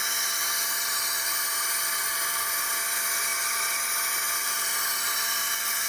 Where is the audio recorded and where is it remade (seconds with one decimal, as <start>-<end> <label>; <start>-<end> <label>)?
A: 0.0-5.9 recorded